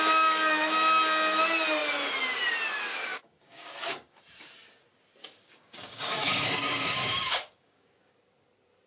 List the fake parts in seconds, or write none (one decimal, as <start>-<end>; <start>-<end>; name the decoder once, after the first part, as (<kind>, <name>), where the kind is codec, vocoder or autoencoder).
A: 2.9-4.2 (codec, DAC); 5.2-8.1